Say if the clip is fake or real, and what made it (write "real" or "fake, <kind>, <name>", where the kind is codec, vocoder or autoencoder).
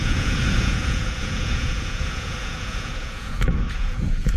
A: fake, vocoder, Vocos